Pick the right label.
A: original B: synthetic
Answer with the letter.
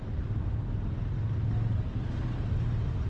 A